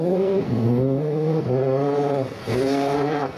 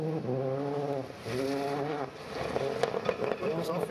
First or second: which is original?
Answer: second